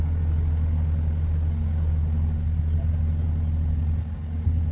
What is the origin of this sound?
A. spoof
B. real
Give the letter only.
B